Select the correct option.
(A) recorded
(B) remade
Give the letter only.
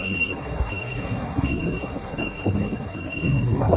B